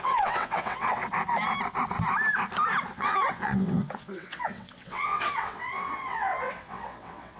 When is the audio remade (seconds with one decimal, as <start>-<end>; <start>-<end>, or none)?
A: 0.0-1.0; 2.9-7.4